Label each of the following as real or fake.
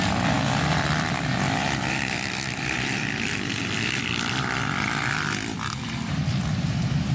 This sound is fake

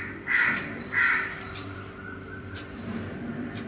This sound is fake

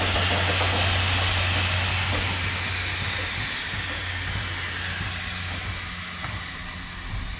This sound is real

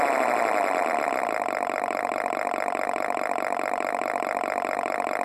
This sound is fake